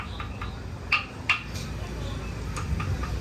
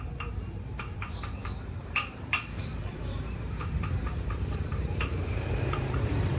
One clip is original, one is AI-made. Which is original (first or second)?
first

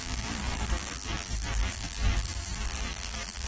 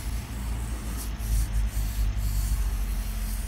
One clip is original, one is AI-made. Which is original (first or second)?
second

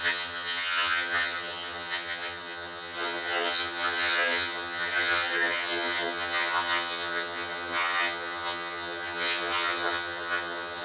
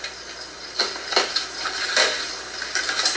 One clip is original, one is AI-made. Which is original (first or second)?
second